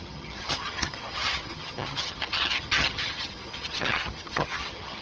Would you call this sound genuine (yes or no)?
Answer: no